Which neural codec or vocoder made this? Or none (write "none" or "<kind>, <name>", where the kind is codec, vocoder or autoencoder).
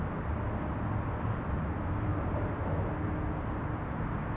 none